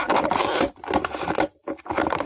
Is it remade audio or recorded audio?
recorded